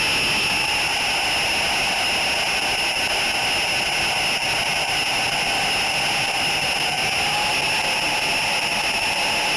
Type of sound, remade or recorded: recorded